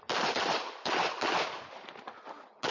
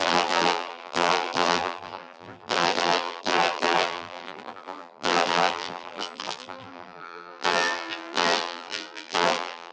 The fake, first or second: second